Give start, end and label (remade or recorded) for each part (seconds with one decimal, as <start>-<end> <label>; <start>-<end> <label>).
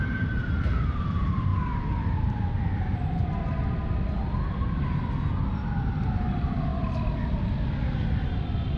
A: 0.0-1.5 remade; 1.5-5.7 recorded; 5.7-6.7 remade; 6.7-8.8 recorded